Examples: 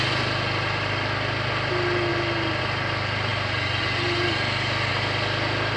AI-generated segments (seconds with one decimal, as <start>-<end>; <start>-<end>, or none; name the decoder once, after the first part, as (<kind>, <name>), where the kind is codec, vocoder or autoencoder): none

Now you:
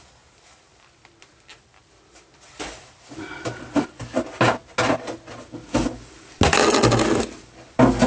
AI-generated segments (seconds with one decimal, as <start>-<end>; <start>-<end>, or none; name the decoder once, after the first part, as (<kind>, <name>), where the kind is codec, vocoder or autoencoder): none

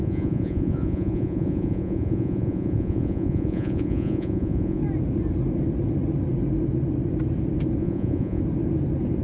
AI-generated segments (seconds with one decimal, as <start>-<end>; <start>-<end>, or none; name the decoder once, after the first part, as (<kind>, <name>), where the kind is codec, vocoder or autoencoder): 0.0-4.8 (vocoder, Vocos); 7.8-8.4